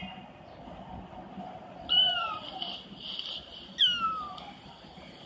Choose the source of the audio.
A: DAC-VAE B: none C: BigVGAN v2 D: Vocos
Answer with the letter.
B